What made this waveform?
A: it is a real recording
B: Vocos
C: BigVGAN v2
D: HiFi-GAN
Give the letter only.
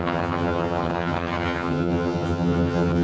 D